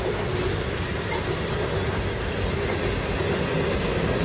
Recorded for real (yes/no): yes